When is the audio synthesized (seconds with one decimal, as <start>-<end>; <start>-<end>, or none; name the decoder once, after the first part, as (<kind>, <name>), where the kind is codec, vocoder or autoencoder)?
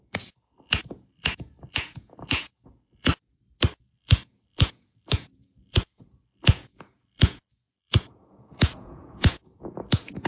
0.0-3.1 (vocoder, Vocos); 3.8-10.3